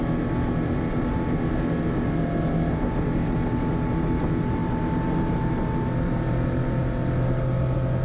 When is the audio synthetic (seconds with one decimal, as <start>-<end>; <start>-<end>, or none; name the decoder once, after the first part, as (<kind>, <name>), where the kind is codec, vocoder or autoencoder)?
none